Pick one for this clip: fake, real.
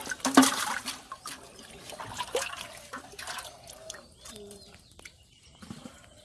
fake